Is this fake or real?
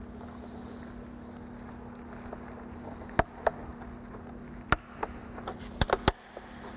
real